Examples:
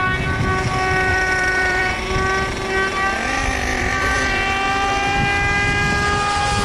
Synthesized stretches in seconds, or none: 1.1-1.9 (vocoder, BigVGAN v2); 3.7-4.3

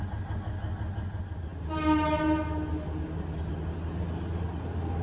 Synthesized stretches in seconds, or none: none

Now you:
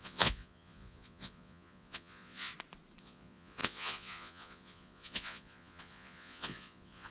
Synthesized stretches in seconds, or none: 0.0-2.5 (vocoder, Vocos); 3.0-7.1